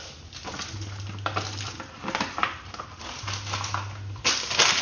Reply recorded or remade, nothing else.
recorded